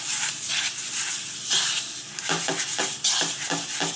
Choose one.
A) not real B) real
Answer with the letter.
B